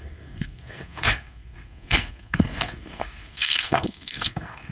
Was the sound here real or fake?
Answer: fake